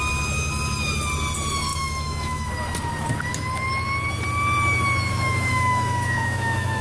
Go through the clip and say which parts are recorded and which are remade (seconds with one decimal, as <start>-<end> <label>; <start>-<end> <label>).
0.0-1.7 recorded; 1.7-2.5 remade; 2.5-5.1 recorded; 5.1-6.8 remade